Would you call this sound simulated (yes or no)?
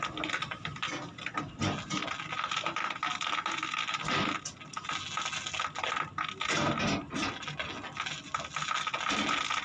no